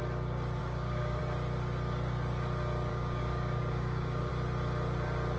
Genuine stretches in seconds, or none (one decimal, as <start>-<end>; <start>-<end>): 0.0-0.6; 1.2-2.9; 4.3-5.4